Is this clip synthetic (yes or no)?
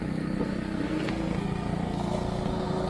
yes